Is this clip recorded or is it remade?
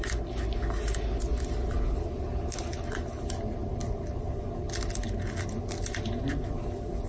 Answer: recorded